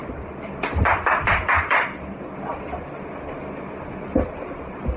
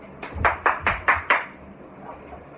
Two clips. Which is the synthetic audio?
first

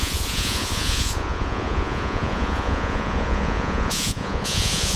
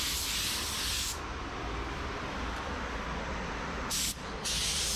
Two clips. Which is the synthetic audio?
first